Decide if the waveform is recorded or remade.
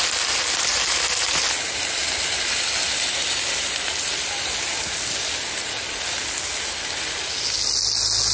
recorded